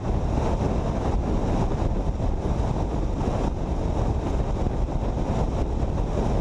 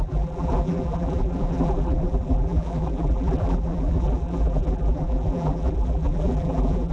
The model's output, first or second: second